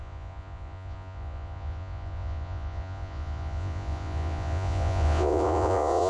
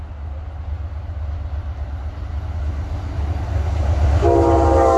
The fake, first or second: first